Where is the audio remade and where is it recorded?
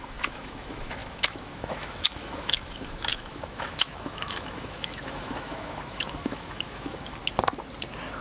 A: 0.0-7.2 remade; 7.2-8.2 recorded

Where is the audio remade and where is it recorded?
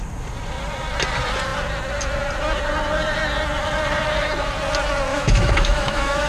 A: 0.0-5.1 recorded; 5.1-6.3 remade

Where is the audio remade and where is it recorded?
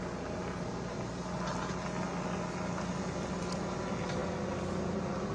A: 0.0-5.3 recorded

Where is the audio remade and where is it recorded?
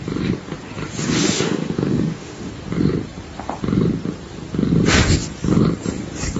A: 0.0-1.0 recorded; 1.0-2.5 remade; 2.5-6.4 recorded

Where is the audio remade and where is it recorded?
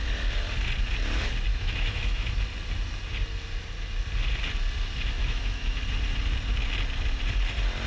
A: 0.0-1.5 recorded; 1.5-2.3 remade; 2.3-5.2 recorded; 5.2-5.8 remade; 5.8-7.9 recorded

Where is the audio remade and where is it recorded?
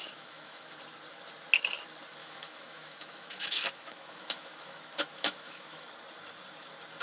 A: 0.0-0.7 remade; 0.7-2.2 recorded; 2.2-5.9 remade; 5.9-7.0 recorded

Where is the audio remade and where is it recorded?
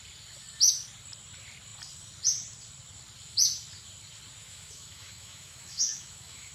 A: 0.0-4.4 recorded; 4.4-6.5 remade